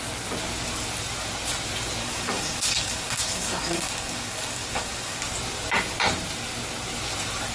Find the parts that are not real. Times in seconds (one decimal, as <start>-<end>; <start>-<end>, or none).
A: 2.0-5.2